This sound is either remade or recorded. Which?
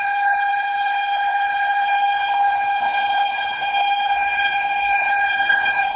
remade